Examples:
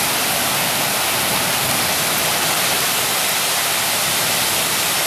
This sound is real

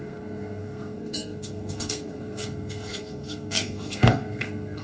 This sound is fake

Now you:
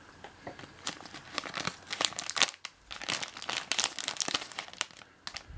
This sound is real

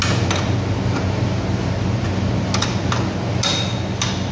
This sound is real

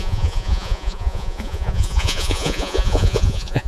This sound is fake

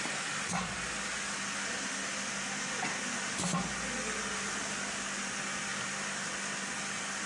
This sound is real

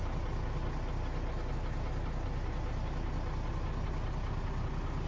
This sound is real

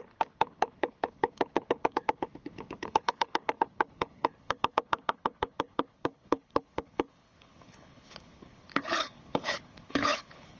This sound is fake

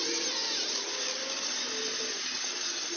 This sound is real